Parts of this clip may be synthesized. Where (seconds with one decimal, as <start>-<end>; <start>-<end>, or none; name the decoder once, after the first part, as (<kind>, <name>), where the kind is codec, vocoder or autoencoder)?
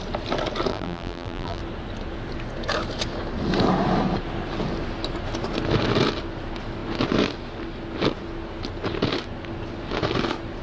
0.7-1.6 (vocoder, BigVGAN v2)